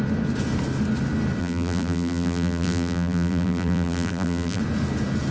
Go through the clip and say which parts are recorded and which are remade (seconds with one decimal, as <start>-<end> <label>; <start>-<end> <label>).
0.0-1.4 recorded; 1.4-4.6 remade; 4.6-5.3 recorded